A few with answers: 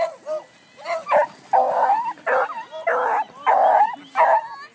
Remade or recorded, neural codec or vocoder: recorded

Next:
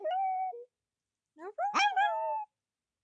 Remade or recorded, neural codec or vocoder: recorded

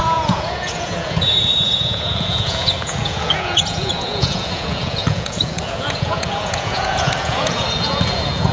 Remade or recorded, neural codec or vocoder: remade, vocoder, Vocos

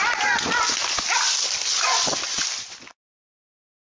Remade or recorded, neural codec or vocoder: recorded